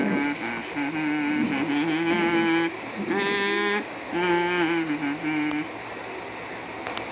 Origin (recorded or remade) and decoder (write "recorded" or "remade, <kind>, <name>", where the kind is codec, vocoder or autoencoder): recorded